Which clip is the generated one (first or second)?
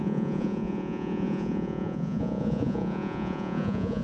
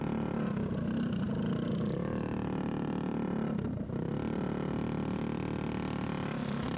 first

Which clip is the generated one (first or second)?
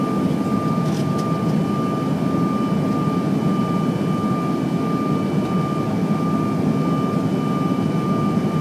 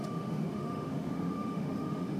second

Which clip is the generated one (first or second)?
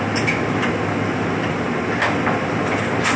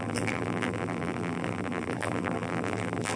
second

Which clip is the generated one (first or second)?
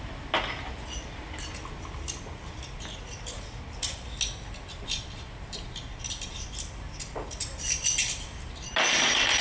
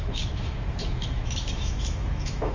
second